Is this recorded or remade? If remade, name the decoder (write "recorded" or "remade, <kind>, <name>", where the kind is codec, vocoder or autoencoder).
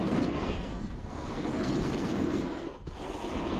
remade, codec, SNAC